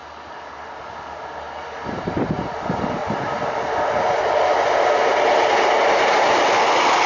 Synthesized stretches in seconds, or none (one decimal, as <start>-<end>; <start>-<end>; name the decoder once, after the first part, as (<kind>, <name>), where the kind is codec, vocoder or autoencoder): none